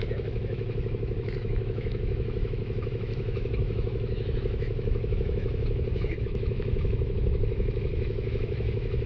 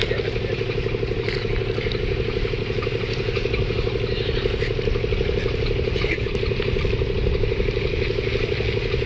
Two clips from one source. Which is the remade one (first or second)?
first